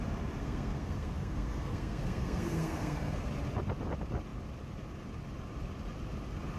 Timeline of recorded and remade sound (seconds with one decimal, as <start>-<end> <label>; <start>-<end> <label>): 0.0-0.4 recorded; 0.4-3.3 remade; 3.3-6.6 recorded